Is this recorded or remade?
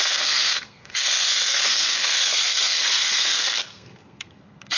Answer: remade